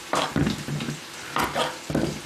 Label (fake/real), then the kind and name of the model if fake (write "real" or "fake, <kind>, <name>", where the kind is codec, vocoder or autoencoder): real